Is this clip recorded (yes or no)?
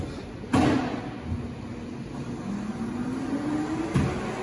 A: yes